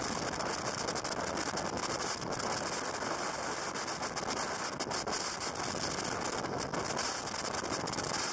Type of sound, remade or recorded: recorded